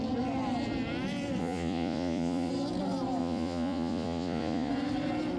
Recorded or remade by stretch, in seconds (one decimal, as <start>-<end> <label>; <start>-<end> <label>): 0.0-1.4 recorded; 1.4-2.5 remade; 2.5-3.2 recorded; 3.2-4.7 remade; 4.7-5.4 recorded